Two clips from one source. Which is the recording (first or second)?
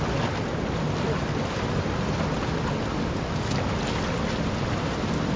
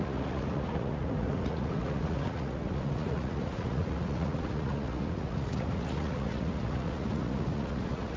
first